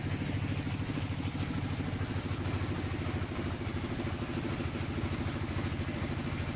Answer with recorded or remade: remade